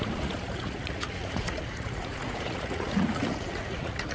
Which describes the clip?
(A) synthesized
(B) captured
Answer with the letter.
A